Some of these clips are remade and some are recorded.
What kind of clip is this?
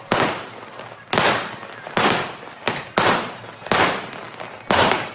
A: recorded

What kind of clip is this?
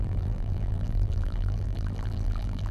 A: remade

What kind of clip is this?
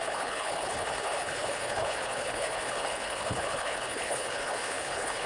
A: remade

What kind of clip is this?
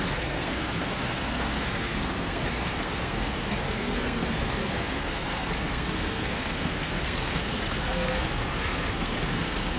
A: remade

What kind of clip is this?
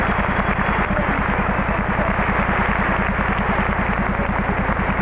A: recorded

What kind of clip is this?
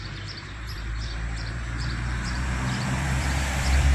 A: remade